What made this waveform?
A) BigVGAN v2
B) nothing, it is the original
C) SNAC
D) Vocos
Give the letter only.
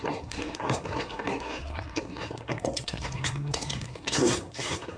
C